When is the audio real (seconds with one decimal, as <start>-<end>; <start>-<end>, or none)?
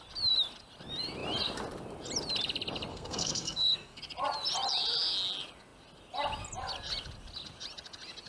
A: 0.0-2.9; 4.0-8.3